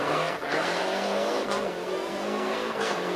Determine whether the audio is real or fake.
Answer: fake